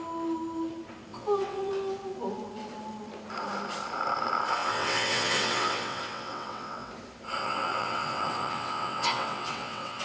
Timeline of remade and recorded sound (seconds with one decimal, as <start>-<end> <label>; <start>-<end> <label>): 0.0-1.1 recorded; 1.1-1.7 remade; 1.7-4.6 recorded; 4.6-6.9 remade; 6.9-7.4 recorded; 7.4-10.0 remade